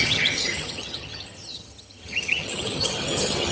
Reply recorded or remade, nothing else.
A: remade